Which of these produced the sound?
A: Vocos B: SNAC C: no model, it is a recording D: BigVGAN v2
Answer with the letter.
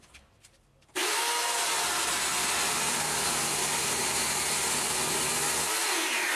C